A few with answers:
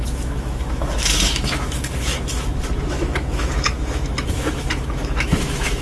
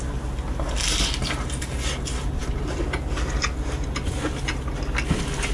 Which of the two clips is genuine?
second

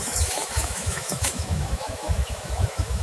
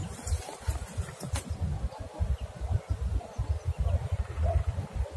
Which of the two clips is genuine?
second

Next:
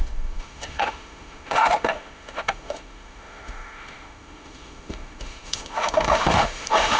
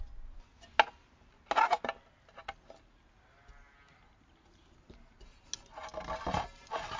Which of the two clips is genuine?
second